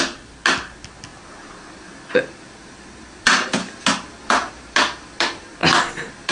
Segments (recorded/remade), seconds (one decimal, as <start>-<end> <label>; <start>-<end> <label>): 0.0-6.3 recorded